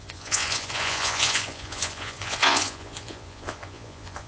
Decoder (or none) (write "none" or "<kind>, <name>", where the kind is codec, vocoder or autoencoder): vocoder, Vocos